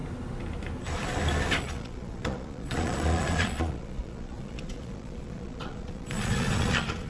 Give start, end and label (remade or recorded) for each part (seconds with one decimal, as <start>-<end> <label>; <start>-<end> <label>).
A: 0.0-1.6 recorded; 1.6-7.1 remade

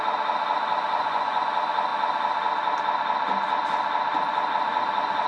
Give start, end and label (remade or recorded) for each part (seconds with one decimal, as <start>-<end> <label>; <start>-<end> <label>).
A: 0.0-0.9 recorded; 0.9-1.4 remade; 1.4-5.3 recorded

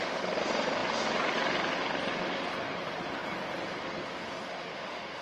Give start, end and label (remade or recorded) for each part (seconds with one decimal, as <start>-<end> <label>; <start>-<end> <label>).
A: 0.0-4.7 recorded; 4.7-5.2 remade

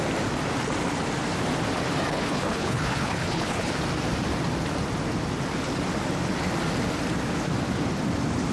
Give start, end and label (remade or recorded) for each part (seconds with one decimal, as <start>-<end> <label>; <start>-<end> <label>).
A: 0.0-2.1 recorded; 2.1-3.7 remade; 3.7-8.5 recorded